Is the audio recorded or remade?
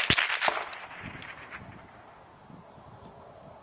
recorded